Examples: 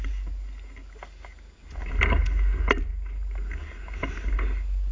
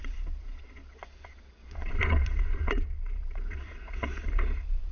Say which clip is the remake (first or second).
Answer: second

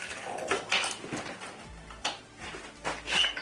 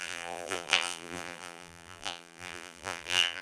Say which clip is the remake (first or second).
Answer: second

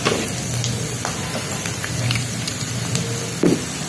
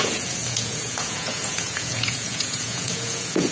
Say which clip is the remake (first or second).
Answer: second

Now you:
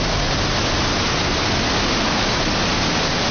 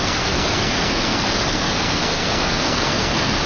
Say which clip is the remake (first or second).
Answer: second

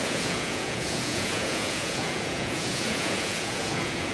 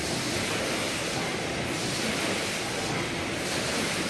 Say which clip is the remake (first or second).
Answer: first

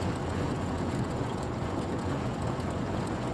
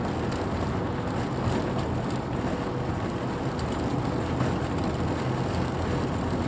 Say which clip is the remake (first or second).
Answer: first